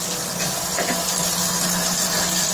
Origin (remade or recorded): recorded